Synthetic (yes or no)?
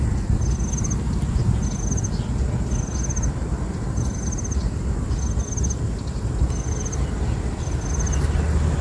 no